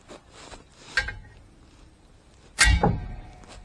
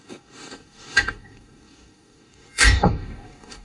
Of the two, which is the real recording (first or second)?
first